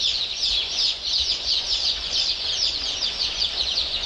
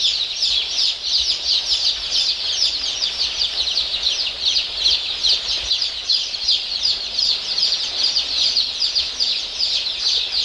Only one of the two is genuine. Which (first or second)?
second